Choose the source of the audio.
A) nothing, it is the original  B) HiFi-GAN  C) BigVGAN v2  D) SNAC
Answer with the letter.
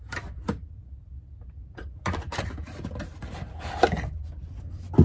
C